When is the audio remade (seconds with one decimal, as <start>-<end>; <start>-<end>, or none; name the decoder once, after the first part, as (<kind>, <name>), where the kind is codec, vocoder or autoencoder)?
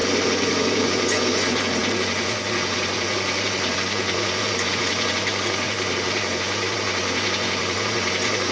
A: 0.0-8.5 (vocoder, Vocos)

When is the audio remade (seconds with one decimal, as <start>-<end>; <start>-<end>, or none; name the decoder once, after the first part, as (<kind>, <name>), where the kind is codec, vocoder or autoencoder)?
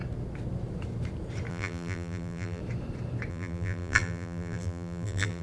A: 1.5-2.6 (vocoder, BigVGAN v2); 3.3-5.4